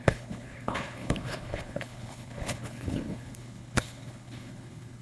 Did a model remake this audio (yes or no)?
yes